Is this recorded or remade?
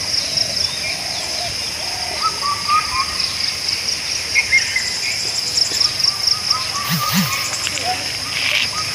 recorded